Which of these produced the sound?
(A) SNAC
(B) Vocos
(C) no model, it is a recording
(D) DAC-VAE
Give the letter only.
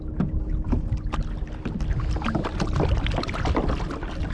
C